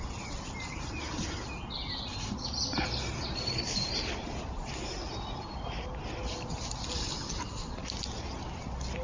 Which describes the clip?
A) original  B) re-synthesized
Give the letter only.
A